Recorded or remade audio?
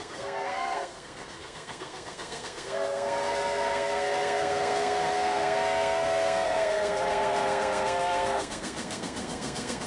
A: remade